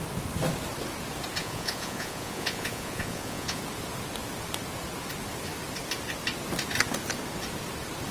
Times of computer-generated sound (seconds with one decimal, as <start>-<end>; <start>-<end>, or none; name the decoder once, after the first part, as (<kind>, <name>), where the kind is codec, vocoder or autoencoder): 1.4-3.6 (vocoder, Vocos)